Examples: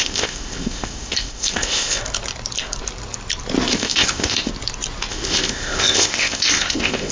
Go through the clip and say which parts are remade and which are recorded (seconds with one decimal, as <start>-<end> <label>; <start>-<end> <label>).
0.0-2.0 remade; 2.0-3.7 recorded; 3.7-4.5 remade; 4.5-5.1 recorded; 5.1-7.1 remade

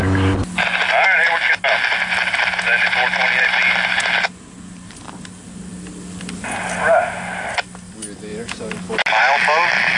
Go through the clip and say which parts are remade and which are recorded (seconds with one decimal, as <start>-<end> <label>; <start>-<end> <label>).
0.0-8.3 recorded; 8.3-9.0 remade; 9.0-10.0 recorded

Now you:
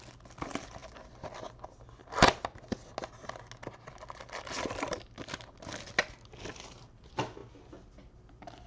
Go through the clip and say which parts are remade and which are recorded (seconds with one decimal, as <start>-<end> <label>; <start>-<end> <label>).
0.0-8.7 recorded